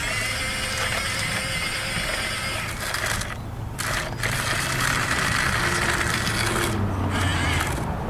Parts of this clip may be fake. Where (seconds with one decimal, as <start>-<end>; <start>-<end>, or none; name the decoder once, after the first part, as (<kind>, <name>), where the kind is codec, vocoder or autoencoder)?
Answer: none